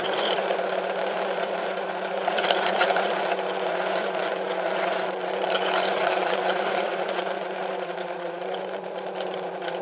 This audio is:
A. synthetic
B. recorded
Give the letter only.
A